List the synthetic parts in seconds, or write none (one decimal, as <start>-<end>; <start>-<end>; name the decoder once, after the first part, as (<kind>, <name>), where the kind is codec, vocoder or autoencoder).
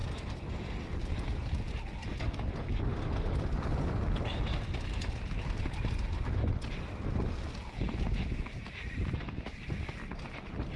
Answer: none